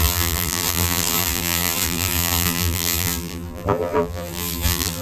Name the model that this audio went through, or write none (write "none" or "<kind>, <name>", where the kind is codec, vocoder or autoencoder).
vocoder, BigVGAN v2